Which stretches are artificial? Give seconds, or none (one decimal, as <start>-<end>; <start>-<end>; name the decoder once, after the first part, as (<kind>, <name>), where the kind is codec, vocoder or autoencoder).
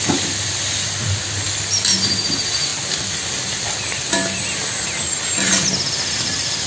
none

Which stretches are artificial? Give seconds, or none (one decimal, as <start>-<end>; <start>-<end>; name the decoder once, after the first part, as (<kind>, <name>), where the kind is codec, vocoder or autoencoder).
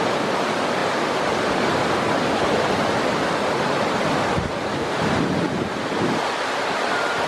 none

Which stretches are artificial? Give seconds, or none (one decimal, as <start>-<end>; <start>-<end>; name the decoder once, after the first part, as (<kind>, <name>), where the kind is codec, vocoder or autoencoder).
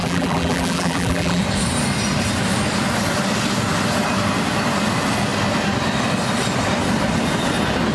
0.0-1.4 (vocoder, BigVGAN v2)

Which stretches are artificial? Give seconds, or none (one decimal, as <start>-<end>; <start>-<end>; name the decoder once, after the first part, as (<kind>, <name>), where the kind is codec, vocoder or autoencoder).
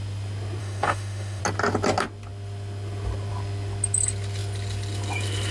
0.6-1.4 (autoencoder, DAC-VAE)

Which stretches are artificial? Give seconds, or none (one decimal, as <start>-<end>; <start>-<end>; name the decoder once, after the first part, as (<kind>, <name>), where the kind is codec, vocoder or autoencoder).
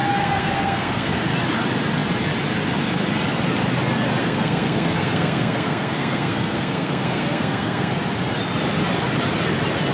0.0-1.2 (codec, SNAC); 4.2-7.9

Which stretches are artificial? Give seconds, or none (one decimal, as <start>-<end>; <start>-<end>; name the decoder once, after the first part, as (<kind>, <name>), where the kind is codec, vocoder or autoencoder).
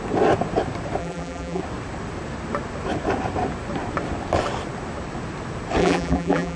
1.0-1.6 (vocoder, BigVGAN v2); 5.8-6.6